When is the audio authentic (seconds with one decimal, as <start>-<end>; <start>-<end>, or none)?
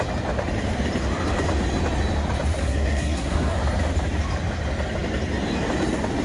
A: 0.0-2.6; 3.6-6.2